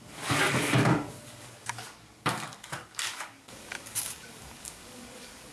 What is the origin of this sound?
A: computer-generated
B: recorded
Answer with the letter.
A